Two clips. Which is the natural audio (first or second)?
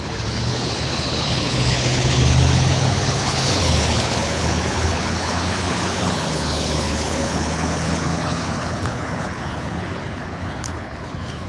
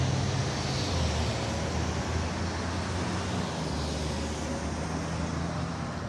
second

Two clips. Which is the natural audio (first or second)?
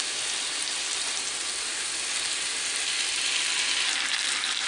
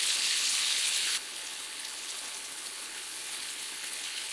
first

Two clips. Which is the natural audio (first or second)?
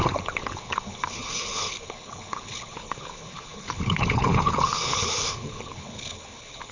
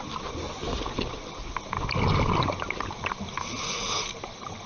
second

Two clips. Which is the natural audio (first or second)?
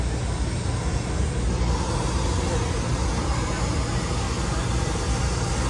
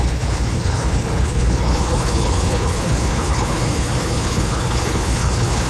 first